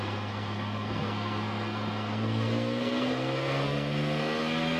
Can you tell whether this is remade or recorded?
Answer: remade